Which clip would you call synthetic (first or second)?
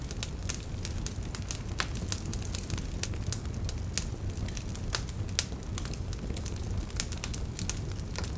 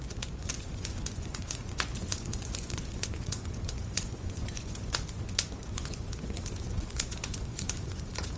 second